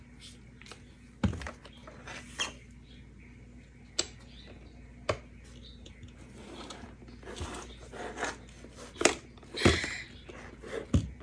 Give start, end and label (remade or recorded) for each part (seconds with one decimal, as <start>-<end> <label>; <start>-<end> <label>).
0.0-11.2 recorded